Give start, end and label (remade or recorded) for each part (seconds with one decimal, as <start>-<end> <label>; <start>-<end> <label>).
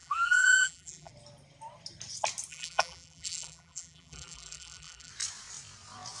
0.0-1.1 remade; 1.1-2.5 recorded; 2.5-5.1 remade; 5.1-6.2 recorded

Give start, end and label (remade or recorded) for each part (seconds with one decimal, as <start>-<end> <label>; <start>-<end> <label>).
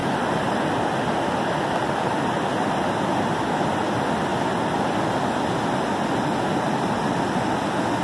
0.0-0.6 remade; 0.6-8.0 recorded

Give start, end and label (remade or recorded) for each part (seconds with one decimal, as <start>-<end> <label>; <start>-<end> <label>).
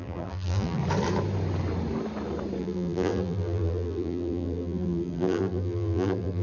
0.0-0.8 remade; 0.8-2.6 recorded; 2.6-6.4 remade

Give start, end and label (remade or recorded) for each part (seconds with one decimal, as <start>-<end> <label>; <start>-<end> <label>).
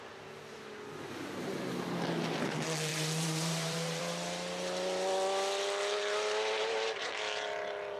0.0-2.9 recorded; 2.9-4.0 remade; 4.0-8.0 recorded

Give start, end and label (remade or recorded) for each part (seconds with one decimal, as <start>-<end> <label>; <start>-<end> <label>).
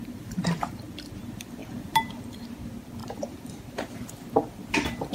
0.0-0.8 remade; 0.8-3.0 recorded; 3.0-4.1 remade; 4.1-5.1 recorded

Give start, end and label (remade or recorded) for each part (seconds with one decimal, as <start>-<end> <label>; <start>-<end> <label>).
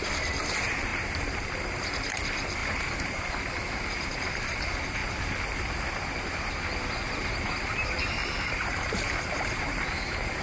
0.0-5.0 remade; 5.0-7.4 recorded; 7.4-10.4 remade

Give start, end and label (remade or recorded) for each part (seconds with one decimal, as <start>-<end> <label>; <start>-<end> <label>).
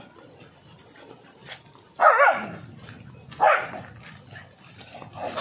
0.0-5.4 recorded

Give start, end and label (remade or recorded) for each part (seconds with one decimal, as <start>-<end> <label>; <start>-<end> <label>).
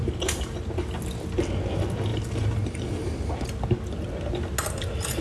0.0-2.1 recorded; 2.1-3.3 remade; 3.3-5.2 recorded